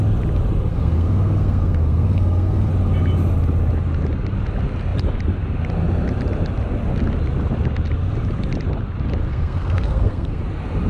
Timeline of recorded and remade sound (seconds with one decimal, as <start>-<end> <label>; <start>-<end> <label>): 0.0-0.7 recorded; 0.7-2.7 remade; 2.7-9.3 recorded; 9.3-10.4 remade; 10.4-10.9 recorded